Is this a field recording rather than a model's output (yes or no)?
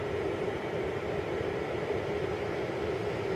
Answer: yes